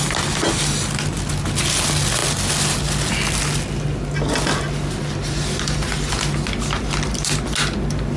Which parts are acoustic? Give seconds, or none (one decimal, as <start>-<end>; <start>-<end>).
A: 0.0-8.2